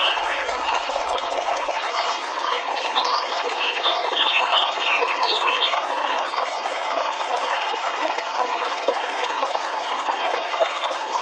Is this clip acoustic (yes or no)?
no